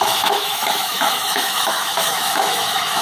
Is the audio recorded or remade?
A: remade